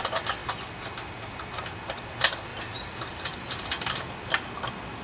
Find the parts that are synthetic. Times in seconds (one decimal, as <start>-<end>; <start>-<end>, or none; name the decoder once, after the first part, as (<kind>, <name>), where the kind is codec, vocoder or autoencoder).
none